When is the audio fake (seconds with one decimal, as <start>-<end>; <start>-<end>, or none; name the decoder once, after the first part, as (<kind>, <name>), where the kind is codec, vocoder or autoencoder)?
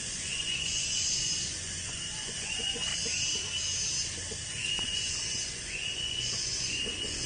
0.0-2.9 (vocoder, Vocos); 4.5-7.3